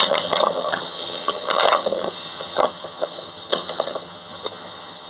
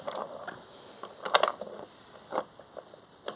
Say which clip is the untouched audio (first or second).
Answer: second